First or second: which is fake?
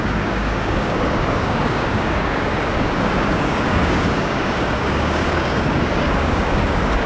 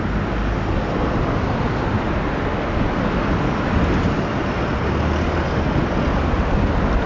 first